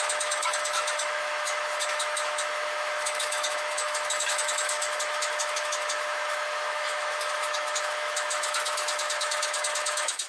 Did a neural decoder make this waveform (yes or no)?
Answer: yes